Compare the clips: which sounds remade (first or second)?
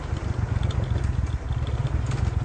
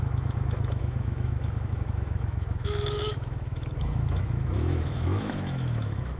second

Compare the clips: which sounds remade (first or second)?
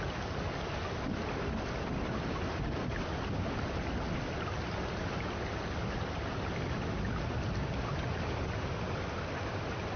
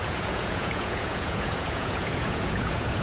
second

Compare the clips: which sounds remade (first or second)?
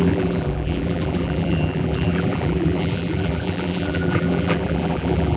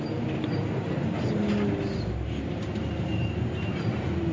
first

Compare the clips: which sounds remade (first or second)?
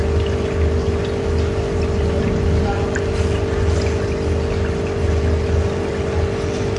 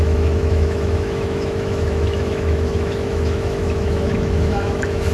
second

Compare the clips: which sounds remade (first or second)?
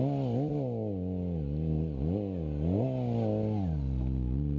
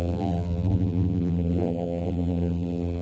second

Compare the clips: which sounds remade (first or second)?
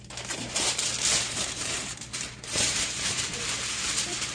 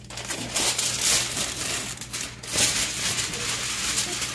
first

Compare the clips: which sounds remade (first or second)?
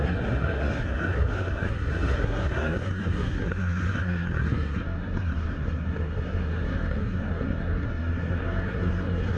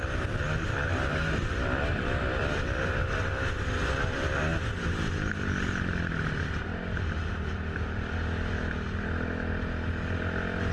first